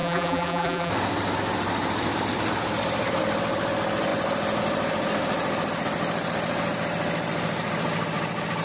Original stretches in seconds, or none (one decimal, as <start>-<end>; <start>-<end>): 0.9-8.6